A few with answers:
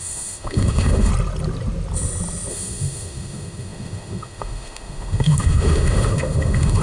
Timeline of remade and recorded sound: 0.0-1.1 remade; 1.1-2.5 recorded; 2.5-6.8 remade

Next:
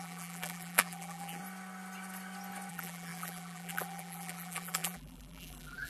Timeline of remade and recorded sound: 0.0-1.4 remade; 1.4-2.7 recorded; 2.7-5.9 remade

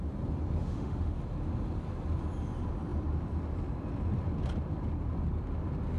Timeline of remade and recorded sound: 0.0-0.6 recorded; 0.6-1.2 remade; 1.2-6.0 recorded

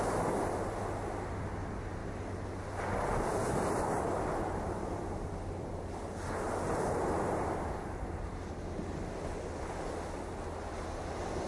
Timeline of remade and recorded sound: 0.0-11.5 recorded

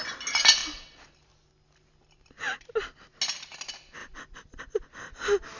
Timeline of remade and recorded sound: 0.0-4.0 recorded; 4.0-4.6 remade; 4.6-5.6 recorded

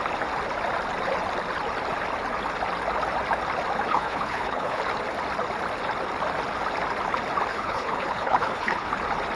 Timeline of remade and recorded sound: 0.0-3.9 recorded; 3.9-4.8 remade; 4.8-7.5 recorded; 7.5-8.9 remade; 8.9-9.4 recorded

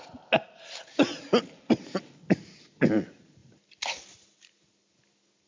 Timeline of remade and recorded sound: 0.0-5.5 recorded